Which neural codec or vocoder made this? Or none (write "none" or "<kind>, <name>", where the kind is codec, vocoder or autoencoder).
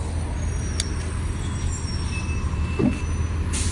none